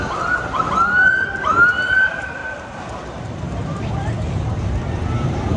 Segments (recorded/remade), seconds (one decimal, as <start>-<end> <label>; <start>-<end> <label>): 0.0-2.4 remade; 2.4-3.5 recorded; 3.5-5.6 remade